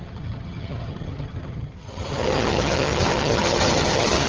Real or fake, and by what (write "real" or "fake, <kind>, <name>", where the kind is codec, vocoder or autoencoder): fake, vocoder, HiFi-GAN